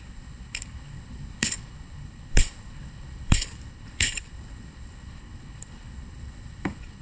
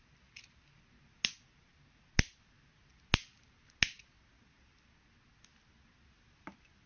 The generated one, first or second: first